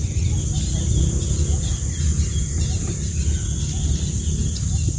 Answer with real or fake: real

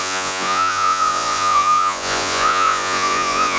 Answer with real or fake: fake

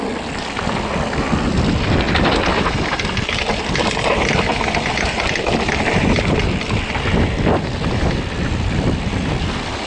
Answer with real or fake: real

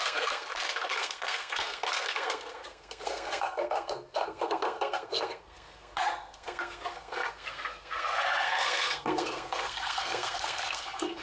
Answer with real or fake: fake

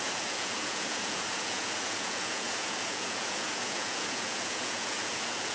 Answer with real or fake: fake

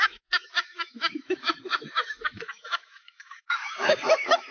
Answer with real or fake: fake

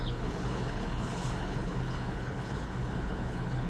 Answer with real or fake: fake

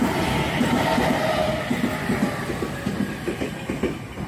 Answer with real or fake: real